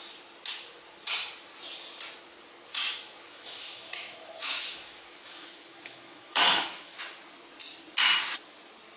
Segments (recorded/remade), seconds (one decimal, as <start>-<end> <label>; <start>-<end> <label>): 0.0-2.7 recorded; 2.7-7.0 remade; 7.0-9.0 recorded